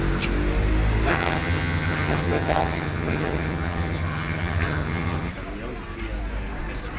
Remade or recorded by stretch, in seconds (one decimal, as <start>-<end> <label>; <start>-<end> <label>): 0.0-1.1 recorded; 1.1-5.3 remade; 5.3-7.0 recorded